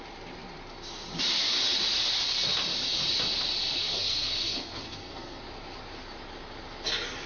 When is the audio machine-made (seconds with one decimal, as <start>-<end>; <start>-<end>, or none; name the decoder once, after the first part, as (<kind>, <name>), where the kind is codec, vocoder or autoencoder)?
3.8-5.4 (codec, SNAC)